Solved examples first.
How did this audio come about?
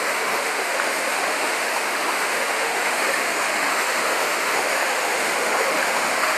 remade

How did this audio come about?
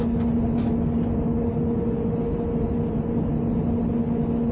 recorded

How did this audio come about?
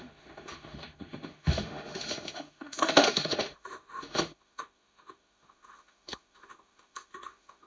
remade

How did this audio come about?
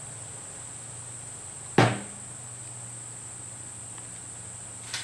recorded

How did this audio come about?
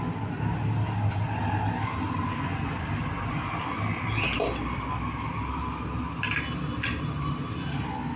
recorded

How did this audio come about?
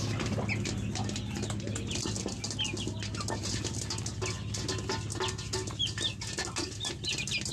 recorded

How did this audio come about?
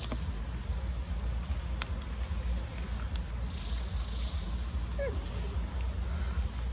recorded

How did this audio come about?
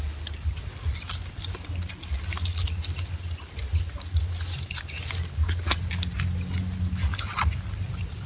recorded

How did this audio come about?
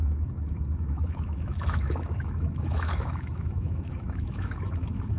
remade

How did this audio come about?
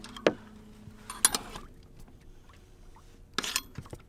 recorded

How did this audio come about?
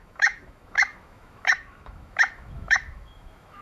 remade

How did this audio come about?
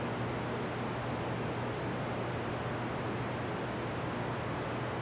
recorded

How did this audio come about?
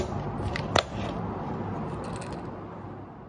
recorded